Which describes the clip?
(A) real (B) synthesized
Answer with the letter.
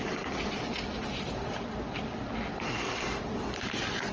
A